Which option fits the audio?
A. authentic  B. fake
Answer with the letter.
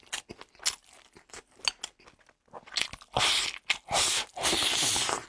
A